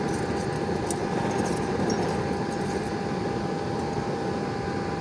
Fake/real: real